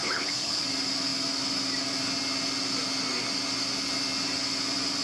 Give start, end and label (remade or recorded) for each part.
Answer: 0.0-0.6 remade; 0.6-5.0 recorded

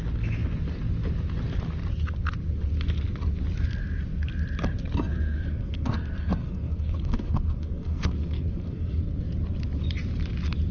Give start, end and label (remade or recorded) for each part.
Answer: 0.0-5.1 recorded; 5.1-9.0 remade; 9.0-10.7 recorded

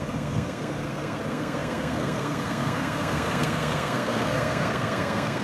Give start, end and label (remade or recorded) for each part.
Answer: 0.0-5.4 remade